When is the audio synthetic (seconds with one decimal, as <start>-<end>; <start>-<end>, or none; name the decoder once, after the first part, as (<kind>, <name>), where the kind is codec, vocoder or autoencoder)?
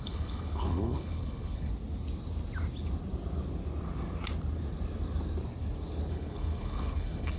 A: 0.0-1.7 (codec, HILCodec); 6.1-7.4